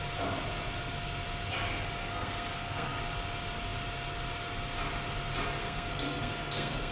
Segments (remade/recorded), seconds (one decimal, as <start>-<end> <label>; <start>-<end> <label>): 0.0-2.0 recorded; 2.0-3.0 remade; 3.0-5.6 recorded; 5.6-6.9 remade

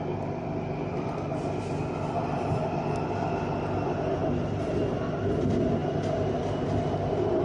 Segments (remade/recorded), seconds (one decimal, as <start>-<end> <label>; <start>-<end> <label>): 0.0-7.4 recorded

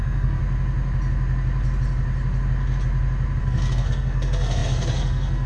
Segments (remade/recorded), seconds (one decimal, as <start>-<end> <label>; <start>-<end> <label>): 0.0-0.4 remade; 0.4-3.4 recorded; 3.4-5.5 remade